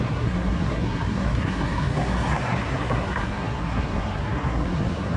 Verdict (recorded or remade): remade